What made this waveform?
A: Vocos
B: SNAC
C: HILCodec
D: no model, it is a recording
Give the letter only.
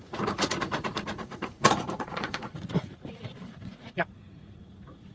A